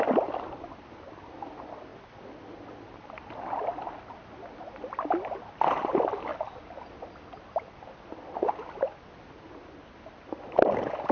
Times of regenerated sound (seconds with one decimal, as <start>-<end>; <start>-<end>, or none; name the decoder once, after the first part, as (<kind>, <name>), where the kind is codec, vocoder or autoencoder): none